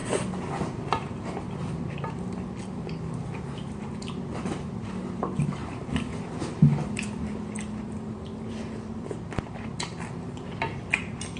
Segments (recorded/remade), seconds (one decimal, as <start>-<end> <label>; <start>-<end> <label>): 0.0-11.4 remade